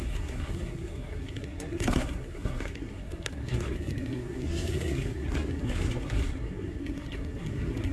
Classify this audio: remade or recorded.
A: remade